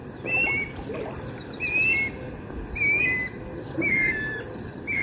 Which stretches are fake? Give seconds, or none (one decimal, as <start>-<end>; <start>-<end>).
none